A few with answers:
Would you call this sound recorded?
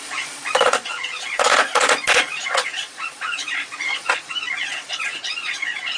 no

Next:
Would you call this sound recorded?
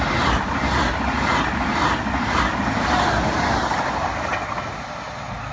yes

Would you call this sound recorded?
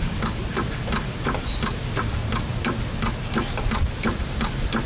yes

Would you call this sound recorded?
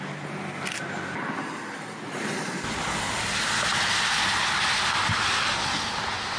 yes